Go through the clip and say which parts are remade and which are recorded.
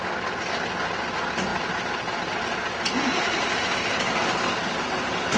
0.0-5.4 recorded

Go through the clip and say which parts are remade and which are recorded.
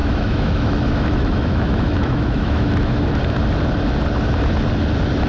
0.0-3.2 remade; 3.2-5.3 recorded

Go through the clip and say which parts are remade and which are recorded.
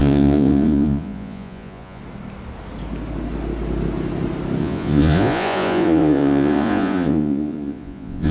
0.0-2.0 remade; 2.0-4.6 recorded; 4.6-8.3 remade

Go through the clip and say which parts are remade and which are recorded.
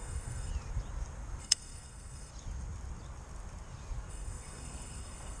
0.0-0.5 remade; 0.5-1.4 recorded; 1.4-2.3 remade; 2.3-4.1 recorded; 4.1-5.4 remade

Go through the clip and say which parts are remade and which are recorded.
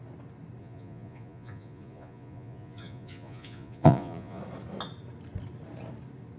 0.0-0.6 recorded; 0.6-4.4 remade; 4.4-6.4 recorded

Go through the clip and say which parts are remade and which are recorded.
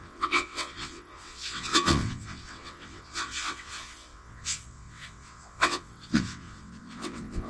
0.0-7.5 remade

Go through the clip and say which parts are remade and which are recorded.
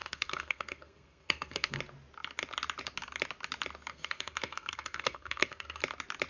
0.0-1.8 remade; 1.8-3.9 recorded; 3.9-5.8 remade; 5.8-6.3 recorded